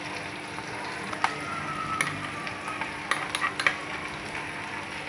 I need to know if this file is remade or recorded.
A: recorded